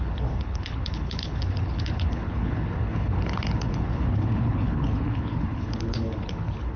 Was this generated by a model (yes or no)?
yes